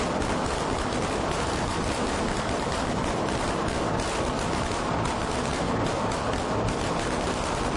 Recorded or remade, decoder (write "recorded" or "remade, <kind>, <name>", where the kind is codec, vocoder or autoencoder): recorded